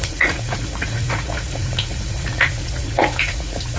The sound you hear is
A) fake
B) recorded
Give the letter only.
A